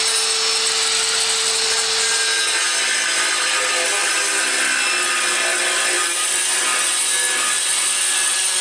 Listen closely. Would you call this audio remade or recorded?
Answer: recorded